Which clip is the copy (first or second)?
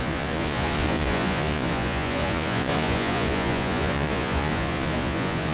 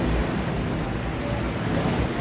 first